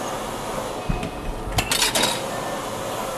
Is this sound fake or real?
real